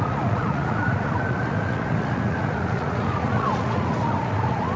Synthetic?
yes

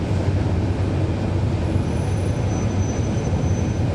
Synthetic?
no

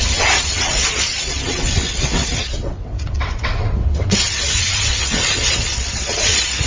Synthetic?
yes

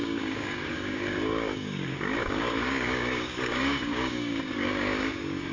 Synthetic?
yes